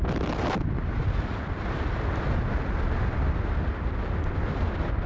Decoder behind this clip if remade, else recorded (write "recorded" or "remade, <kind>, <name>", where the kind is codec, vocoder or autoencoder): recorded